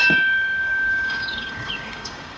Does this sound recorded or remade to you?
remade